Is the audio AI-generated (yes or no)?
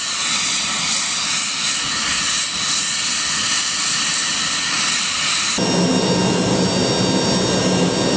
no